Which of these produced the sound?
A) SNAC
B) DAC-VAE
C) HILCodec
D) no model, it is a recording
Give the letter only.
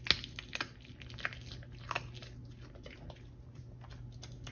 D